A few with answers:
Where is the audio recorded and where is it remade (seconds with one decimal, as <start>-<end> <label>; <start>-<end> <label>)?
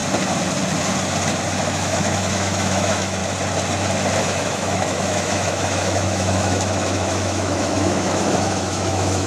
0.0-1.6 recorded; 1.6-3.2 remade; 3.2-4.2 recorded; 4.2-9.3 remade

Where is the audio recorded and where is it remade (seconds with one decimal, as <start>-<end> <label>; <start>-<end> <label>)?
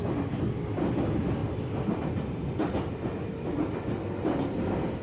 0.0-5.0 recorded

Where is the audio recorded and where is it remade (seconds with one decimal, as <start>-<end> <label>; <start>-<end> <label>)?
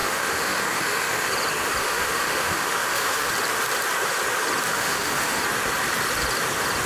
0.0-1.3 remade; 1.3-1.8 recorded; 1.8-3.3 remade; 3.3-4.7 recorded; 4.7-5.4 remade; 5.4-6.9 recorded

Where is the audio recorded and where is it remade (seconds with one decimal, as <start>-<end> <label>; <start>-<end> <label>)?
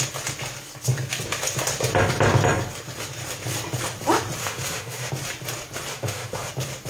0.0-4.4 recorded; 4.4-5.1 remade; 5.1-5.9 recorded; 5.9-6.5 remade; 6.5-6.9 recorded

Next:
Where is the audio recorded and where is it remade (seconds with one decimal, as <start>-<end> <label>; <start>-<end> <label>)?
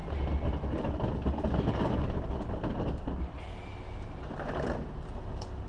0.0-5.7 recorded